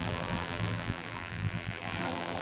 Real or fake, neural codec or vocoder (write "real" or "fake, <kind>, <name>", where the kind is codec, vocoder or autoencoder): fake, vocoder, BigVGAN v2